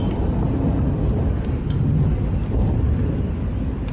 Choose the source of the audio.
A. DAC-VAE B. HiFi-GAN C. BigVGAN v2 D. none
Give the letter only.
D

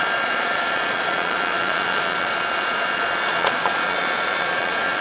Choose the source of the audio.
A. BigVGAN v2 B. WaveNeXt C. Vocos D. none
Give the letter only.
C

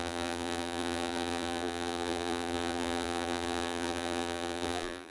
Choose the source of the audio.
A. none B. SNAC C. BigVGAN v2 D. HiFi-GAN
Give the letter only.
C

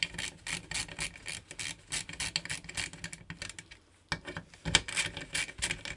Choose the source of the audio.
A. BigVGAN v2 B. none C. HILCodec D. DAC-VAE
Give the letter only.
B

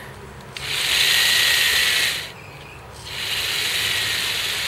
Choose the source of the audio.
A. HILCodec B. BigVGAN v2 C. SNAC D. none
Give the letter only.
D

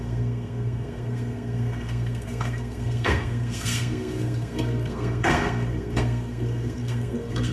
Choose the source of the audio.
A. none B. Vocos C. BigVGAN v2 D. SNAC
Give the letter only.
D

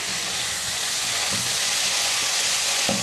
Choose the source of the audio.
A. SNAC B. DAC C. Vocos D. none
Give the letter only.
C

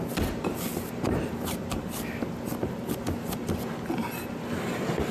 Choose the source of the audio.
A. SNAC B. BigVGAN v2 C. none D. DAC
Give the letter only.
C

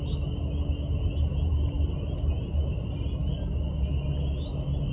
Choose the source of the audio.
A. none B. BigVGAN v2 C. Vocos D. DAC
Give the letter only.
A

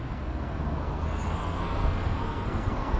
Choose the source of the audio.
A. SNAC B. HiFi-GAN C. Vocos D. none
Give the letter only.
A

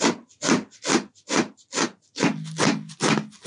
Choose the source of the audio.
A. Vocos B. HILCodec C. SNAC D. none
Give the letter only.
D